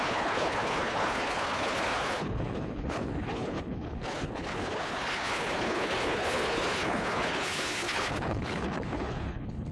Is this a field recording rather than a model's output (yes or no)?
no